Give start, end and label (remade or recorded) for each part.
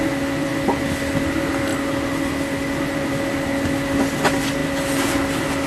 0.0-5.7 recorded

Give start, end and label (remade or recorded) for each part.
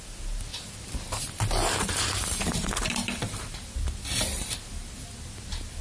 0.0-5.8 recorded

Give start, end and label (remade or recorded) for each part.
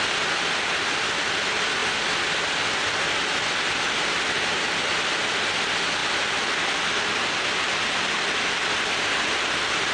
0.0-9.9 recorded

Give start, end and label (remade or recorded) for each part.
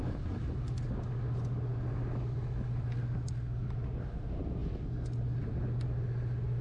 0.0-6.6 recorded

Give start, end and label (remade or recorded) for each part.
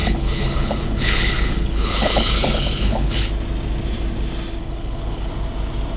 0.0-3.3 remade; 3.3-4.6 recorded; 4.6-5.3 remade; 5.3-6.0 recorded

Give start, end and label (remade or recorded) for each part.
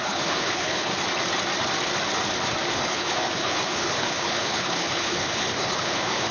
0.0-0.9 remade; 0.9-2.7 recorded; 2.7-6.3 remade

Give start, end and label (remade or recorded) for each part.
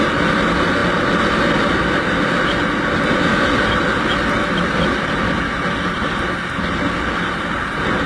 0.0-8.1 recorded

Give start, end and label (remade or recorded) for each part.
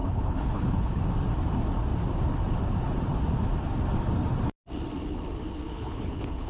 0.0-1.0 remade; 1.0-5.7 recorded; 5.7-6.5 remade